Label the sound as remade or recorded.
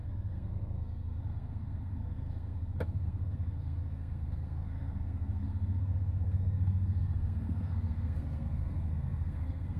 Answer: remade